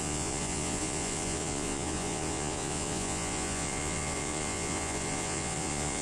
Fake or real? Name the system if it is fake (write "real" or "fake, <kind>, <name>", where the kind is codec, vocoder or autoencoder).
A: fake, vocoder, Vocos